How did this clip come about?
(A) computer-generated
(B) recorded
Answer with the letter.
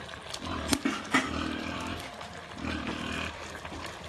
B